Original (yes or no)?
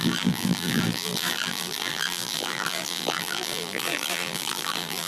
no